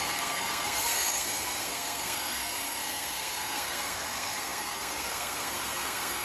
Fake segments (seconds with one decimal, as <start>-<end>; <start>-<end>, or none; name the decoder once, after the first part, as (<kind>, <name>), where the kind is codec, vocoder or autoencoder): 0.0-6.2 (codec, SNAC)